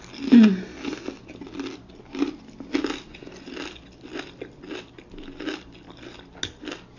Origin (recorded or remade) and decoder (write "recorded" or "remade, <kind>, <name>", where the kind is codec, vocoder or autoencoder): recorded